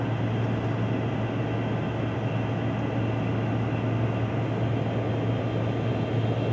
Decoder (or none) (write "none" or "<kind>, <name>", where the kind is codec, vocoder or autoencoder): none